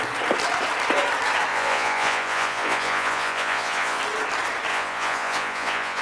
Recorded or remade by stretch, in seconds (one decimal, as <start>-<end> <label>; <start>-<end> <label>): 0.0-1.5 recorded; 1.5-4.0 remade; 4.0-4.7 recorded; 4.7-6.0 remade